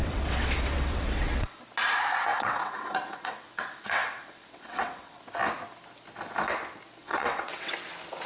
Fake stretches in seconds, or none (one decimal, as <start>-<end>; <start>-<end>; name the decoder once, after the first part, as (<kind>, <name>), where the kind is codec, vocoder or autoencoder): 0.0-1.6 (vocoder, WaveNeXt); 2.3-5.2; 7.0-7.7